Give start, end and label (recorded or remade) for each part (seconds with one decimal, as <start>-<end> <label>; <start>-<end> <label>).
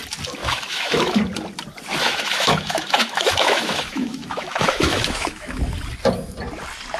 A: 0.0-0.4 recorded; 0.4-1.2 remade; 1.2-2.0 recorded; 2.0-5.6 remade; 5.6-7.0 recorded